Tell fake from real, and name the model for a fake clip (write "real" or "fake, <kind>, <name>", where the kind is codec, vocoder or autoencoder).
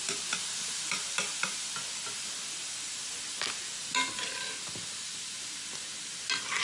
real